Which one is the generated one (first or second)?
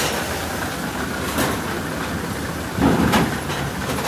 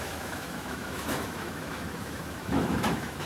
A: second